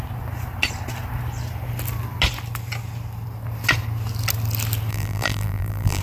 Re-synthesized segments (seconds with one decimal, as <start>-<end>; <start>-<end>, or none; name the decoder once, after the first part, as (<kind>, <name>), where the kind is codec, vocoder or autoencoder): 4.9-6.0 (vocoder, BigVGAN v2)